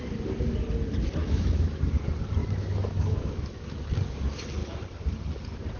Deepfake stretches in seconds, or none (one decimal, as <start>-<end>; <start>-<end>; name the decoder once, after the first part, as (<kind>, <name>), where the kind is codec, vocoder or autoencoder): 1.2-1.8 (autoencoder, DAC-VAE); 2.4-3.9